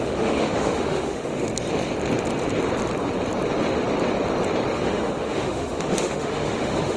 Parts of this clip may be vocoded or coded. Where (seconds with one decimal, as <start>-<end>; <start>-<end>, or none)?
0.0-1.5; 4.7-7.0